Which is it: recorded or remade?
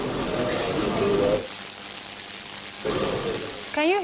recorded